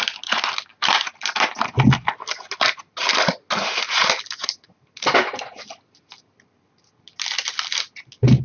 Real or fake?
real